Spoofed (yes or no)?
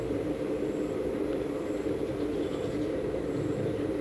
no